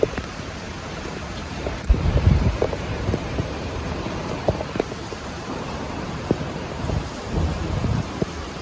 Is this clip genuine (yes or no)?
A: no